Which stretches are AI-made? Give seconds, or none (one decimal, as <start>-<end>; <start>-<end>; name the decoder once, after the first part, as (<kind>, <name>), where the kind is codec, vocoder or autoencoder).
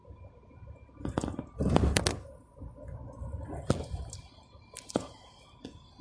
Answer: none